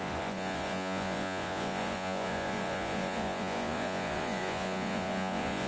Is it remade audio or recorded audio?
remade